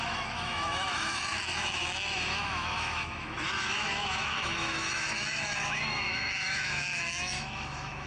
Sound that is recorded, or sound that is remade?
remade